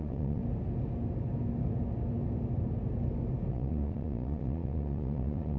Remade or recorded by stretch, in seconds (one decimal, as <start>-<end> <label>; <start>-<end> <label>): 0.0-0.4 remade; 0.4-3.5 recorded; 3.5-5.6 remade